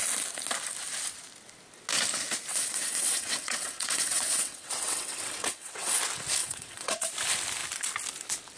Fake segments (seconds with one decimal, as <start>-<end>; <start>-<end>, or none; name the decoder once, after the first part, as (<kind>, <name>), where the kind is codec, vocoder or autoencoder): 2.5-6.0 (vocoder, WaveNeXt); 6.4-7.1